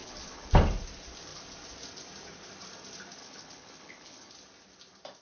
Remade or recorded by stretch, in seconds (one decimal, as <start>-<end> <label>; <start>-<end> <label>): 0.0-0.5 remade; 0.5-3.2 recorded; 3.2-4.3 remade; 4.3-5.2 recorded